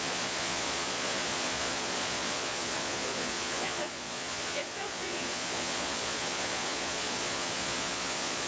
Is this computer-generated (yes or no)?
yes